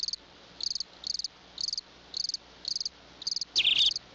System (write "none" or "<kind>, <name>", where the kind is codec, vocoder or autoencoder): none